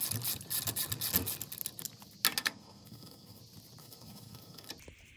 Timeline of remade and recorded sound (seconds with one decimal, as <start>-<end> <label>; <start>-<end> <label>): 0.0-2.4 recorded; 2.4-3.4 remade; 3.4-3.8 recorded; 3.8-4.7 remade; 4.7-5.2 recorded